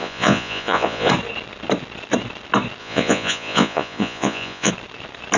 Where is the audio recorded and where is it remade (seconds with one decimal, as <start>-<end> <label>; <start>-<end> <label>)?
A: 0.0-1.1 remade; 1.1-2.8 recorded; 2.8-4.7 remade; 4.7-5.4 recorded